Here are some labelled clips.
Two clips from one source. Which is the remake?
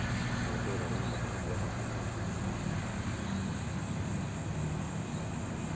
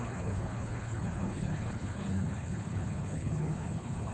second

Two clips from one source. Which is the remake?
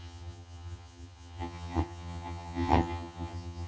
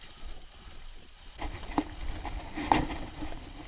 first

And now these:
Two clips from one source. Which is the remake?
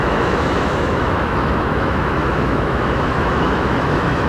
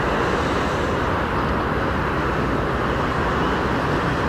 first